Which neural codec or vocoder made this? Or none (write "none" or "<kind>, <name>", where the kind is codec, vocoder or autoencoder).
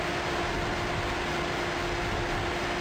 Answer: none